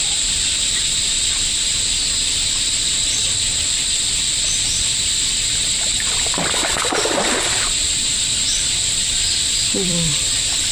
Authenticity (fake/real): fake